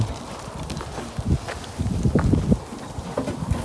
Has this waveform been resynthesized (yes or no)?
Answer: no